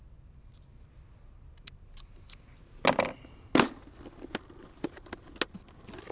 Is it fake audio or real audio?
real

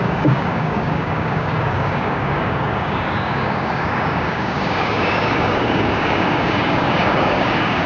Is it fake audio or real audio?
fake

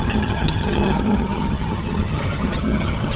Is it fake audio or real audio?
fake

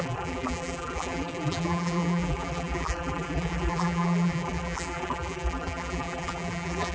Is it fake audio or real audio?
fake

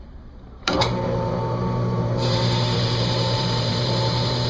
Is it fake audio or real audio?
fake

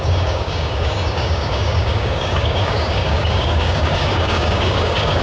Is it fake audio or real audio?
fake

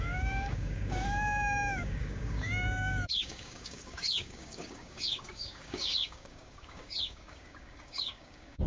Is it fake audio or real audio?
fake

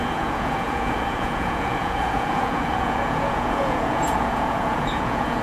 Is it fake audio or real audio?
fake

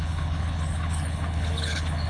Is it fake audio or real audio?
fake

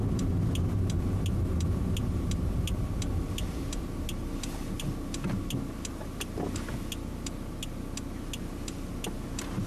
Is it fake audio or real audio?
real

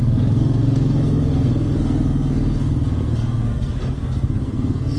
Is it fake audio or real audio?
fake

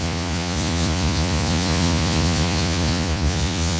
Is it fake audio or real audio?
fake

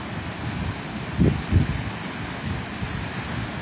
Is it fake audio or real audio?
real